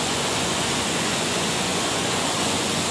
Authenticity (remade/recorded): remade